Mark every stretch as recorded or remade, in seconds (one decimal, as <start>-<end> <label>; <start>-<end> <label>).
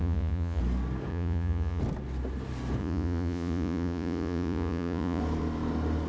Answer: 0.0-0.6 remade; 0.6-1.1 recorded; 1.1-1.8 remade; 1.8-2.8 recorded; 2.8-5.2 remade; 5.2-6.1 recorded